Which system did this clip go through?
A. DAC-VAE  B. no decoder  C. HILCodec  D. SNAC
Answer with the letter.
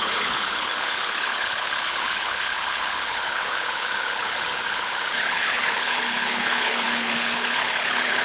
C